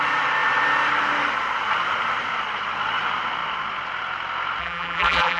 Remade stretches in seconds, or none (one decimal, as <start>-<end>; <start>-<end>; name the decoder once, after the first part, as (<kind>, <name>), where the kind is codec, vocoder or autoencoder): 4.6-5.4 (vocoder, BigVGAN v2)